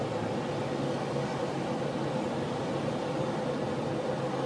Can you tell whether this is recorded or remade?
recorded